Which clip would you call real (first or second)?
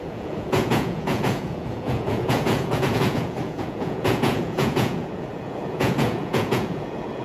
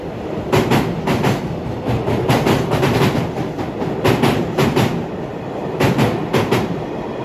second